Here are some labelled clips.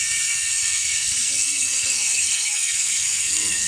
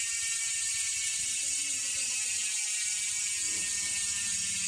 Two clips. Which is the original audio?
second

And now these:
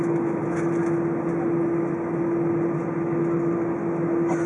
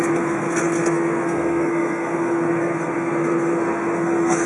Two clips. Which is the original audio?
first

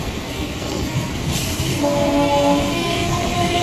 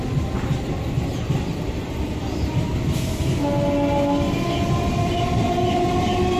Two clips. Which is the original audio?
second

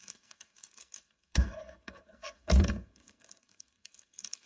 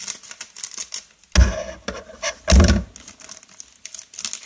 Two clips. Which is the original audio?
second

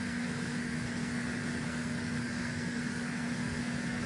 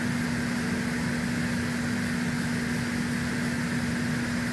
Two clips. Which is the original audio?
second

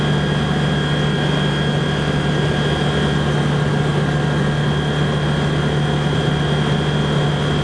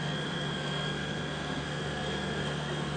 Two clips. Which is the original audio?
first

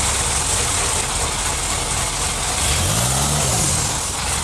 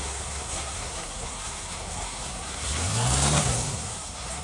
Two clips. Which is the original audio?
first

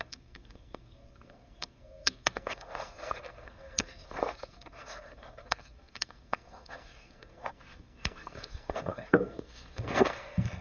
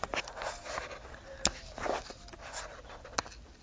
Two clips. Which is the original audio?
second